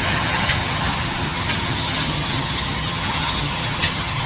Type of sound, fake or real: fake